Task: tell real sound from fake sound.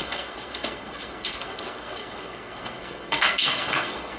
fake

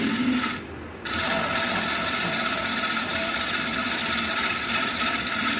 real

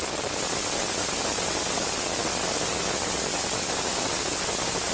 real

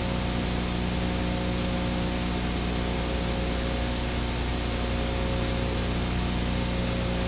real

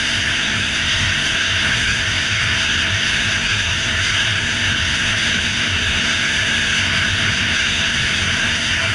fake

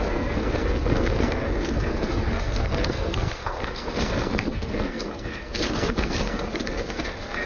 fake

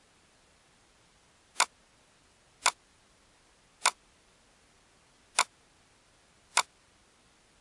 real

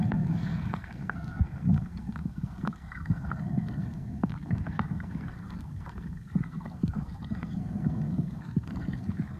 fake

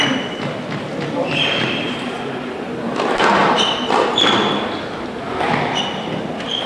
real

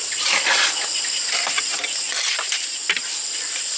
real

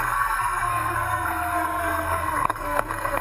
fake